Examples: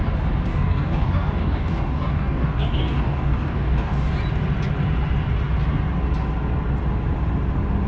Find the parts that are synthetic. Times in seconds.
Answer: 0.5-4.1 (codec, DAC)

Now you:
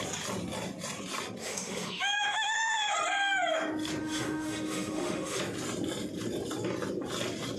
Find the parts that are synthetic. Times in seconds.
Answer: 1.4-2.9 (autoencoder, DAC-VAE); 4.0-5.4

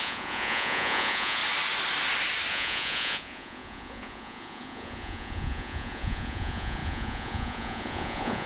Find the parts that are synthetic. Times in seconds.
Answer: 0.0-1.4 (vocoder, Vocos); 2.5-8.5

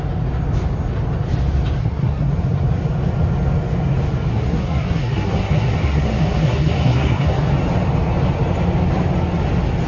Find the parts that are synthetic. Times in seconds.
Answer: 1.8-2.3 (codec, SNAC); 4.3-7.5